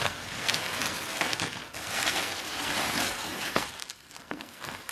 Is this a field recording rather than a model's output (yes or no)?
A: no